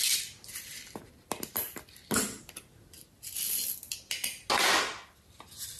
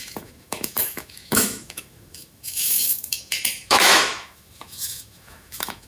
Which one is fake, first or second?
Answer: second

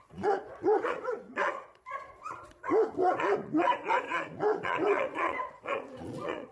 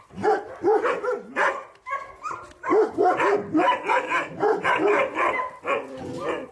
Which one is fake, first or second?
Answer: first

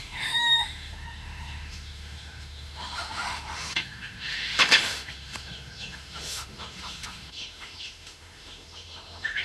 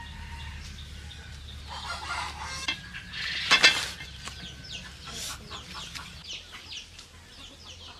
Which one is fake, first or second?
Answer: first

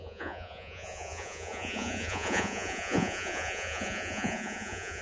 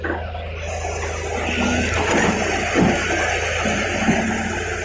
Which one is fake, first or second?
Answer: first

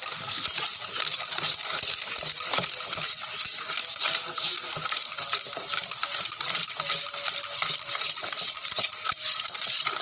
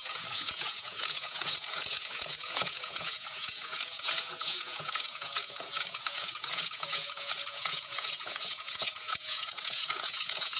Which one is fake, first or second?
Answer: second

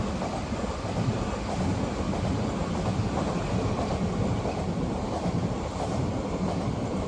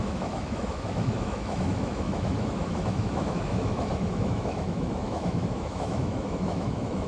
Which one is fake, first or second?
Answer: second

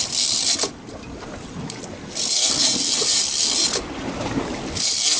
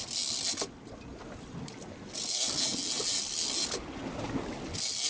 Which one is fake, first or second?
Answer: first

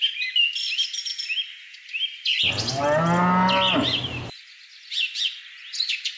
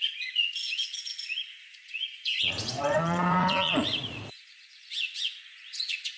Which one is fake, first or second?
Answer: second